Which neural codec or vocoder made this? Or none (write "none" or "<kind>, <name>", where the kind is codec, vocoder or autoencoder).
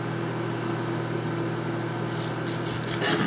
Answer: none